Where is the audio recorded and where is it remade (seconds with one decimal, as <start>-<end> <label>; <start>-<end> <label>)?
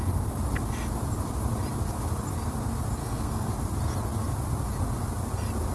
0.0-3.0 recorded; 3.0-3.5 remade; 3.5-5.7 recorded